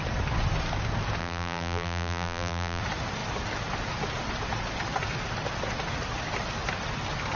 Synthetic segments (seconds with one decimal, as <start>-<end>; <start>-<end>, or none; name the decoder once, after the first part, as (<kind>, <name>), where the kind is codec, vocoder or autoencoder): 1.2-2.8 (vocoder, BigVGAN v2)